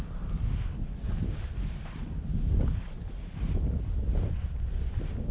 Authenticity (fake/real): real